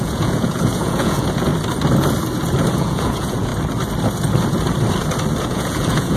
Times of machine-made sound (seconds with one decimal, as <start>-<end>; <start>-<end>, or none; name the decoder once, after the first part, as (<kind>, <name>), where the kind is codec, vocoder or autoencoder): 0.0-1.5 (vocoder, Vocos); 2.8-3.5; 5.4-6.2

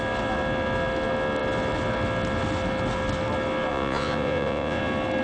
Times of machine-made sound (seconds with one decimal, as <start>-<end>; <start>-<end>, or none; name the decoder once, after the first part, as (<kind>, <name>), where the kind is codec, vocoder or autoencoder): 3.7-4.8 (vocoder, Vocos)